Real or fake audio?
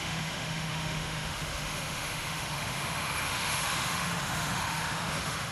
fake